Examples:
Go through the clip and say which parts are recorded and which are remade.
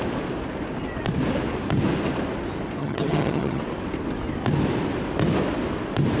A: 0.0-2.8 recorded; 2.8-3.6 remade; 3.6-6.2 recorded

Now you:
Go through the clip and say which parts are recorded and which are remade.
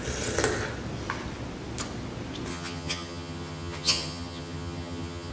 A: 0.0-2.5 recorded; 2.5-5.3 remade